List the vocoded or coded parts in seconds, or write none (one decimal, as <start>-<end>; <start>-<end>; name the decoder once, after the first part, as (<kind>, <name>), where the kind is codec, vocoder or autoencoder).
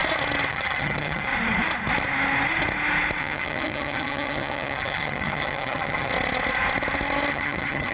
0.5-1.3 (vocoder, HiFi-GAN); 3.2-6.1; 7.3-7.9